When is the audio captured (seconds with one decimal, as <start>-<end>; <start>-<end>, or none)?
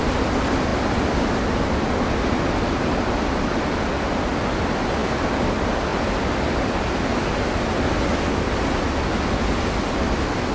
0.0-10.5